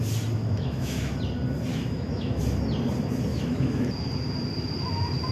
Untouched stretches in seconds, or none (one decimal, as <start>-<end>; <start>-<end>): 0.0-0.4; 1.2-1.7; 2.4-3.3; 3.9-5.3